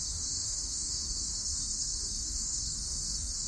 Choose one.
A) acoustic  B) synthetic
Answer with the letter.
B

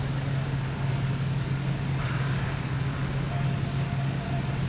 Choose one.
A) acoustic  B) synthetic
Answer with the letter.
B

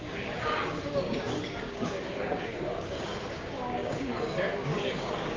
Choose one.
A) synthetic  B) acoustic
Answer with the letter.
A